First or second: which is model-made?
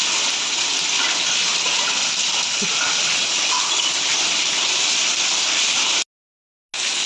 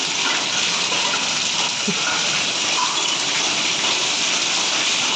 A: second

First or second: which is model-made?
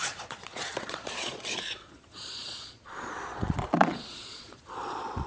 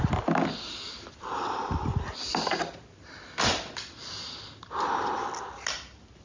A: first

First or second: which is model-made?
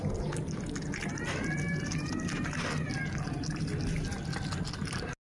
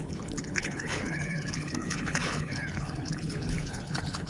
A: second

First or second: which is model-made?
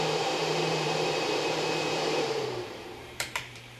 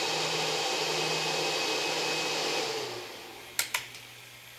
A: first